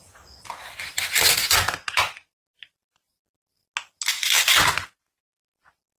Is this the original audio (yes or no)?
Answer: yes